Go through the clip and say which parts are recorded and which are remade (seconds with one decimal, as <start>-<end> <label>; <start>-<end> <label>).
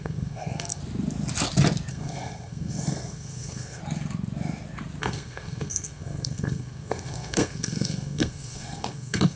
0.0-0.8 remade; 0.8-1.9 recorded; 1.9-3.8 remade; 3.8-5.0 recorded; 5.0-9.4 remade